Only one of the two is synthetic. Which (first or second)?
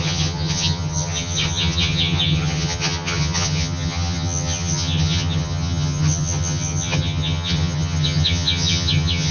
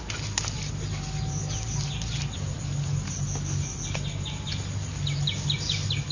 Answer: first